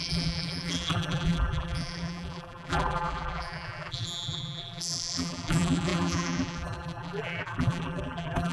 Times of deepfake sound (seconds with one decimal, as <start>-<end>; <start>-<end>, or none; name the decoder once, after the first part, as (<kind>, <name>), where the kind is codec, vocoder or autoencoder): 0.0-8.5 (vocoder, BigVGAN v2)